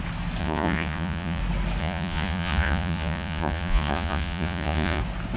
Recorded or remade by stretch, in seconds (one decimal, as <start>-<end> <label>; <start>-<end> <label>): 0.0-0.4 recorded; 0.4-1.4 remade; 1.4-1.8 recorded; 1.8-5.0 remade; 5.0-5.4 recorded